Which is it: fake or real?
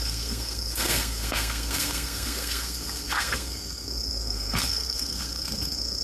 fake